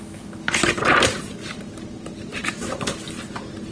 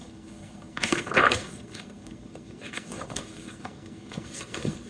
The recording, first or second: first